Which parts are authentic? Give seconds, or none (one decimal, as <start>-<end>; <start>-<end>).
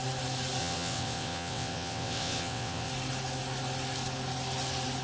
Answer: 0.0-0.6; 2.9-5.0